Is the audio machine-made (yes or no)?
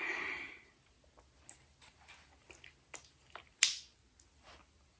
no